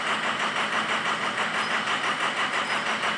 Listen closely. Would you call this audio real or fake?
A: real